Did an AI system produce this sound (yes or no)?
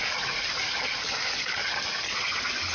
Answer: no